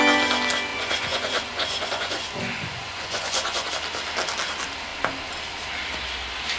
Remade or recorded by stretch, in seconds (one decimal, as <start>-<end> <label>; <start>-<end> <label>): 0.0-0.7 recorded; 0.7-3.7 remade; 3.7-6.6 recorded

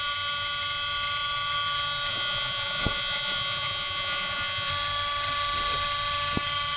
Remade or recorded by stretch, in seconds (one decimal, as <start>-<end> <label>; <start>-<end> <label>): 0.0-2.1 recorded; 2.1-4.7 remade; 4.7-6.8 recorded

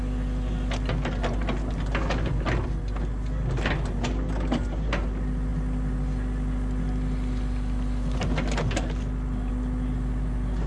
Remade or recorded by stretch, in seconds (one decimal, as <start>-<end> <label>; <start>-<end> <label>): 0.0-10.7 recorded

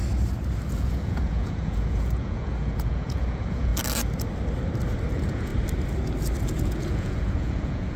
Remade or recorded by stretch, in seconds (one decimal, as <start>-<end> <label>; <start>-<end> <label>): 0.0-0.7 recorded; 0.7-3.7 remade; 3.7-5.1 recorded; 5.1-5.5 remade; 5.5-6.6 recorded; 6.6-8.0 remade

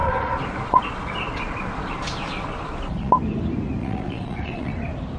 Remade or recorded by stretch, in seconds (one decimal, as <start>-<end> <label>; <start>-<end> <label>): 0.0-3.1 remade; 3.1-3.8 recorded; 3.8-4.7 remade; 4.7-5.2 recorded